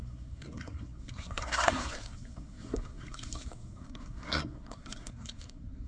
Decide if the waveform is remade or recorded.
remade